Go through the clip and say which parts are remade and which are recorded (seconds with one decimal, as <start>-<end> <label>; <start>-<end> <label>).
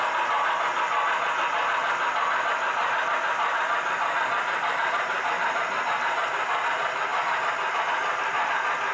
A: 0.0-8.9 recorded